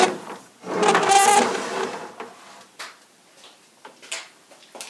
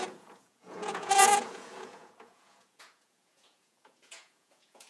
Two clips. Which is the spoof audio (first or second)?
second